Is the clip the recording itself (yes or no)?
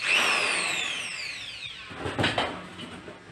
yes